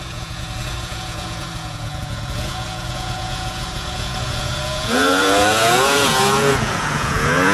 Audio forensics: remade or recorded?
remade